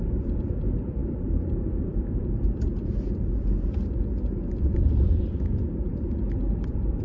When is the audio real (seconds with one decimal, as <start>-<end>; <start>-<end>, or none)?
5.9-6.6